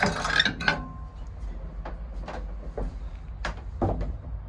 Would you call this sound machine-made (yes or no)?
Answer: no